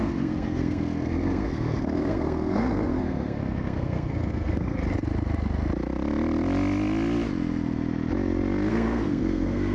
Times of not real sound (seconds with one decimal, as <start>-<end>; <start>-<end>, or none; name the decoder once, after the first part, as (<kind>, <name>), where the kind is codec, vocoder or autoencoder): 0.0-4.8 (codec, SNAC); 8.7-9.7